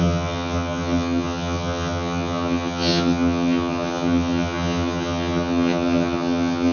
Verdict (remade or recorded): remade